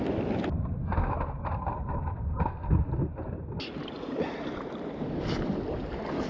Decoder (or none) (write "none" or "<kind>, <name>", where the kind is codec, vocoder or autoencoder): none